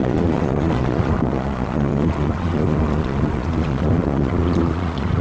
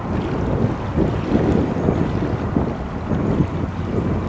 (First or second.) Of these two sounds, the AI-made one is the first